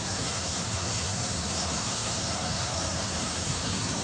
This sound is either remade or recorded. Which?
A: remade